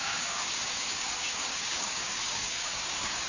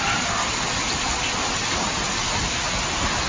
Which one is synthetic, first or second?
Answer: first